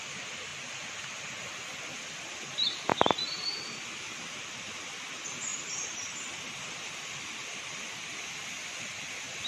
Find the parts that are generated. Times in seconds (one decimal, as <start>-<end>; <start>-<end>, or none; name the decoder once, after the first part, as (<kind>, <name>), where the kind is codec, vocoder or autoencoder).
none